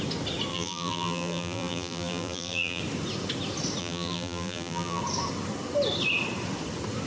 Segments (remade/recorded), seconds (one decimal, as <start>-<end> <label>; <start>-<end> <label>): 0.0-0.5 recorded; 0.5-2.8 remade; 2.8-3.8 recorded; 3.8-5.0 remade; 5.0-7.1 recorded